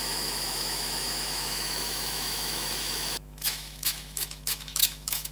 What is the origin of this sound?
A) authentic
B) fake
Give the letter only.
B